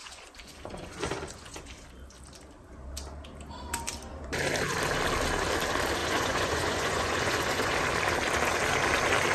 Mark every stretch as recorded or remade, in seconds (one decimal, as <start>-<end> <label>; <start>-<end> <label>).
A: 0.0-1.7 remade; 1.7-6.0 recorded; 6.0-7.7 remade; 7.7-9.3 recorded